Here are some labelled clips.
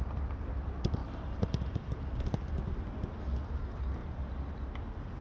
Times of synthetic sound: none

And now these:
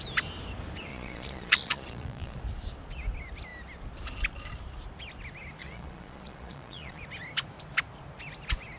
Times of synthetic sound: 0.9-2.4 (vocoder, Vocos); 5.6-7.0

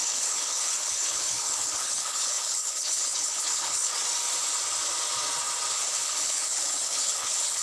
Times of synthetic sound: 0.0-3.9 (codec, HILCodec); 5.7-7.6

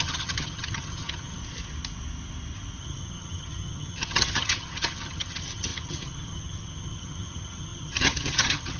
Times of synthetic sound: 0.0-1.4 (vocoder, HiFi-GAN); 2.8-8.8

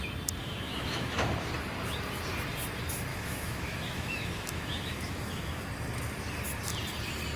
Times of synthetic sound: 0.4-1.3 (autoencoder, DAC-VAE); 3.1-5.6

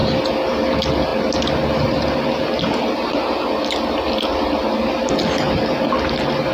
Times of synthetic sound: none

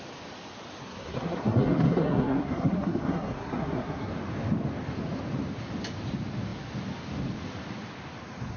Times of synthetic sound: 0.8-4.1 (codec, SNAC)

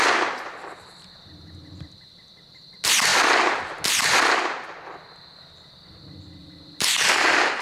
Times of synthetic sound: 6.4-7.6 (vocoder, BigVGAN v2)